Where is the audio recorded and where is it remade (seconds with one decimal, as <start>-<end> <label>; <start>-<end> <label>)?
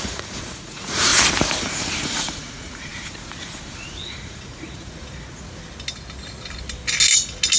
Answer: 0.0-1.1 remade; 1.1-1.7 recorded; 1.7-5.6 remade; 5.6-7.6 recorded